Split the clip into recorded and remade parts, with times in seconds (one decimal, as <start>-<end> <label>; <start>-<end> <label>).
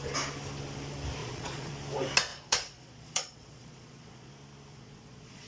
0.0-1.2 recorded; 1.2-1.7 remade; 1.7-2.3 recorded; 2.3-4.3 remade; 4.3-4.7 recorded; 4.7-5.5 remade